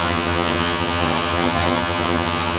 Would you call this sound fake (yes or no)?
yes